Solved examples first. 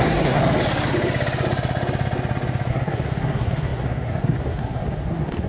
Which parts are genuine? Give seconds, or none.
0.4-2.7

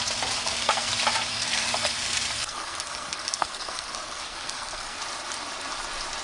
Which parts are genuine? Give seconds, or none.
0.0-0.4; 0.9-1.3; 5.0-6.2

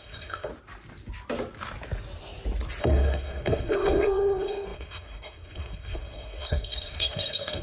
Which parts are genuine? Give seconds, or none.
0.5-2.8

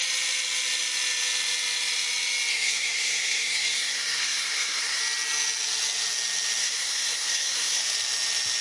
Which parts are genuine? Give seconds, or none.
0.0-2.5; 5.0-6.6; 7.8-8.6

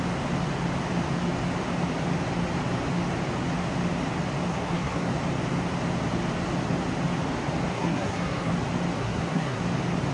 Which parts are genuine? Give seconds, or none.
0.0-4.5; 5.1-7.7; 8.5-9.0; 9.6-10.1

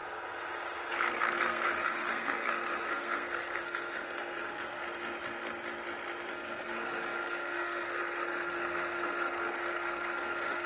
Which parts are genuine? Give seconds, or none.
0.0-0.9; 4.8-6.3

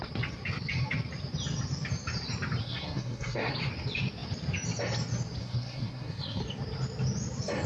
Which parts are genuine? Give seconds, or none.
0.0-2.6; 3.5-5.4; 6.4-7.7